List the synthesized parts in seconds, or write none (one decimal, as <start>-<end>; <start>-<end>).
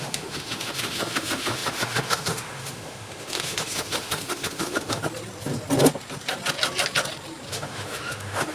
0.0-5.0; 7.5-8.5